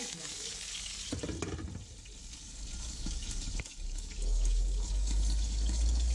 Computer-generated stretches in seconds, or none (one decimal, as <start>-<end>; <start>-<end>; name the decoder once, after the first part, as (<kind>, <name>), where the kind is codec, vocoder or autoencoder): 0.0-1.0 (codec, DAC); 2.2-6.1